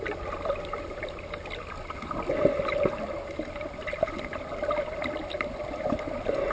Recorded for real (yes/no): yes